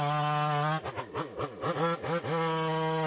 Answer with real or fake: real